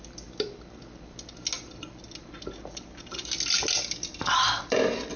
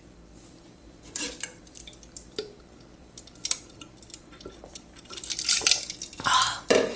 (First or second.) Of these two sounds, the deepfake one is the second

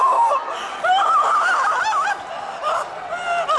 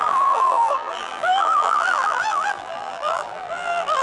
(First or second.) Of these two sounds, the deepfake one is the second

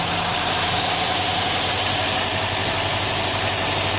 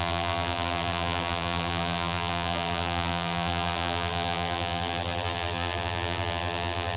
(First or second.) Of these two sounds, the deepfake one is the second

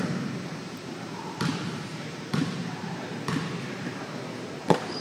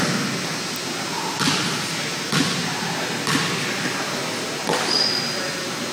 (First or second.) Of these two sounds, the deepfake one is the first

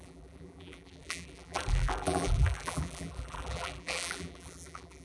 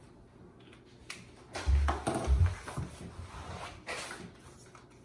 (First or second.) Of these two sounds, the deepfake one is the first